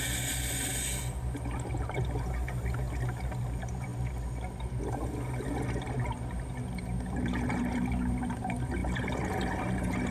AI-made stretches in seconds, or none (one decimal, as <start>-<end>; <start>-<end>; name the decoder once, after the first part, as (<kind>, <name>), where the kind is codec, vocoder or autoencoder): none